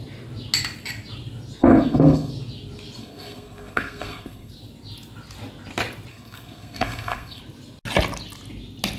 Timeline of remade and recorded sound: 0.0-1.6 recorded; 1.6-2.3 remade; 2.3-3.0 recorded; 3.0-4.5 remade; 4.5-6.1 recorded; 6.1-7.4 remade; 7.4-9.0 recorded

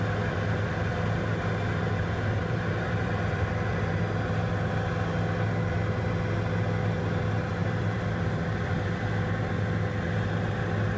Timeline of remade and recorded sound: 0.0-2.4 recorded; 2.4-4.0 remade; 4.0-7.6 recorded; 7.6-9.0 remade; 9.0-11.0 recorded

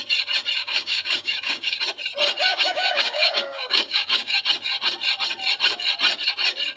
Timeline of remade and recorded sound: 0.0-0.6 recorded; 0.6-1.8 remade; 1.8-2.5 recorded; 2.5-4.4 remade; 4.4-6.8 recorded